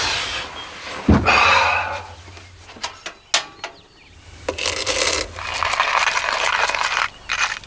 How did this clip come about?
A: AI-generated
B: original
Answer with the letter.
B